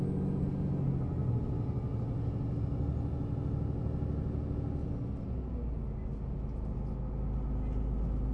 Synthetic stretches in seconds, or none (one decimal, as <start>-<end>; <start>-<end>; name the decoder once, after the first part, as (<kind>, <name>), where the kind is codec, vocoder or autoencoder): none